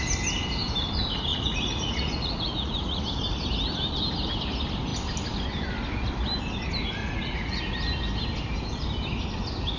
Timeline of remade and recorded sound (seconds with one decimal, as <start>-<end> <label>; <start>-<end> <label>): 0.0-1.3 recorded; 1.3-3.0 remade; 3.0-7.0 recorded; 7.0-7.6 remade; 7.6-9.8 recorded